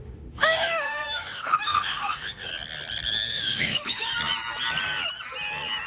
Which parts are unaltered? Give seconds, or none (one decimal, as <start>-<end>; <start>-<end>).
2.5-3.3; 4.1-5.9